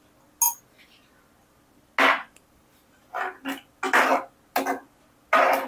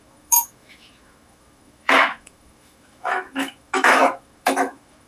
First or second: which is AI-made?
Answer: second